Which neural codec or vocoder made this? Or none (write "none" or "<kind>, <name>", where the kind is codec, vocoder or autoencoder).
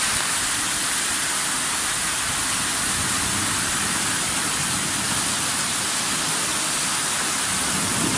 none